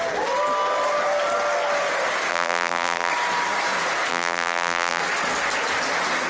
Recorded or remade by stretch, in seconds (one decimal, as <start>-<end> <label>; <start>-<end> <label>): 0.0-2.3 recorded; 2.3-3.1 remade; 3.1-4.1 recorded; 4.1-5.0 remade; 5.0-6.3 recorded